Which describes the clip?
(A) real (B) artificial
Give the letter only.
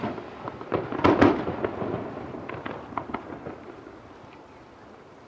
A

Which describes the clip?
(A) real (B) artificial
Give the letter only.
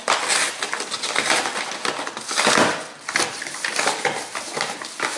A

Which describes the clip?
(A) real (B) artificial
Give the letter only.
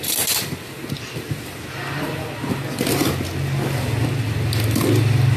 A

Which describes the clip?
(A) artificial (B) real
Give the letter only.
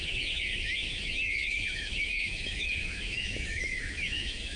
A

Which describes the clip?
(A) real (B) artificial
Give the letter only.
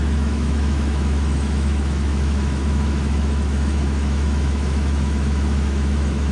B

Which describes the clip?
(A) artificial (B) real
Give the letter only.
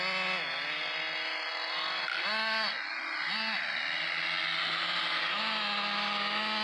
B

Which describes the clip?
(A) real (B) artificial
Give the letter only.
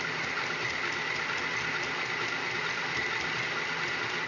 A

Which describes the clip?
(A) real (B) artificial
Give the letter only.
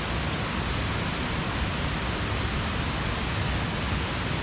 A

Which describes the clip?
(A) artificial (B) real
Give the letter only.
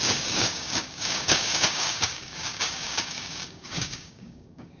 A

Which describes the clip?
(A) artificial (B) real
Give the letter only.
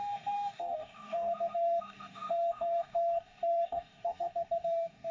A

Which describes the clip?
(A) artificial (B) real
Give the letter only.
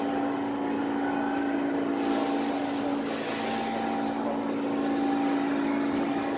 B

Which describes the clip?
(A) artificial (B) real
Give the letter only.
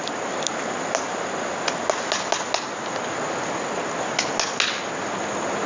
B